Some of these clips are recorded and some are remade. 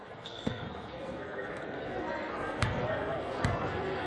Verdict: remade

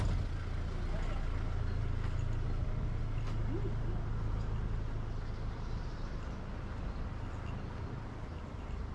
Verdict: recorded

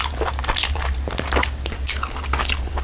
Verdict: recorded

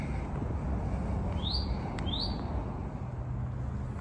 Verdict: recorded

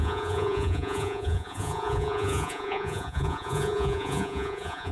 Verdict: remade